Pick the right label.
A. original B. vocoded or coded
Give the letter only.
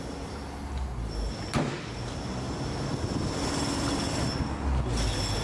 A